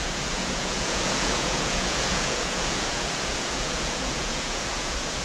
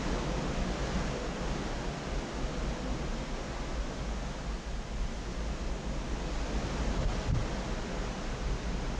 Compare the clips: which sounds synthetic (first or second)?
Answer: first